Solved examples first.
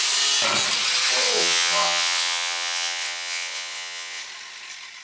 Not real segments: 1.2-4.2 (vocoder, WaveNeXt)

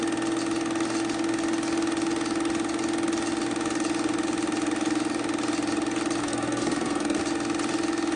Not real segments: 6.2-7.2 (codec, SNAC)

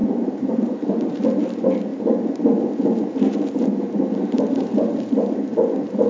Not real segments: 0.0-1.2 (vocoder, BigVGAN v2)

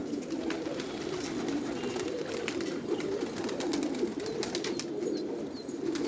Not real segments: none

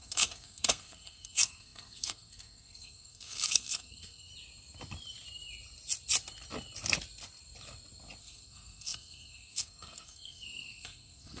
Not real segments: 0.0-4.3 (codec, SNAC); 8.2-11.4

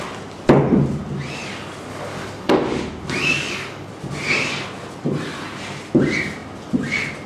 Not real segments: 1.9-2.5 (codec, DAC); 3.2-3.9

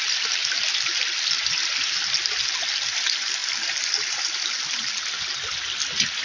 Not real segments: 0.0-3.4 (vocoder, BigVGAN v2)

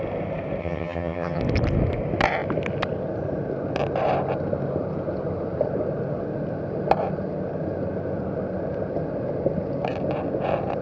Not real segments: 0.6-1.4 (vocoder, HiFi-GAN)